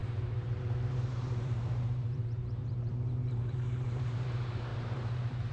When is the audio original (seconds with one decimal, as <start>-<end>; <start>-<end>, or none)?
none